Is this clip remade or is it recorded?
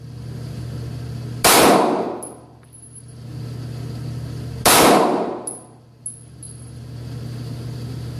recorded